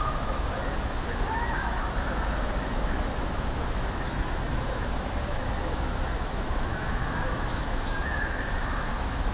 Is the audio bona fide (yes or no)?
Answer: no